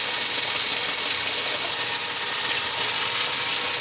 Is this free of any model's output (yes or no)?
yes